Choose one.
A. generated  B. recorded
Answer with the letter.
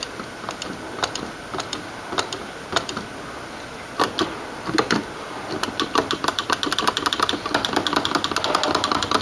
B